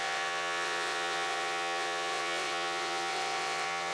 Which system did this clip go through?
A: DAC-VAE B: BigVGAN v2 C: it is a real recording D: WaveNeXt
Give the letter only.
D